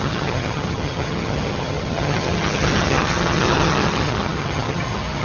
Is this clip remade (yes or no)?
yes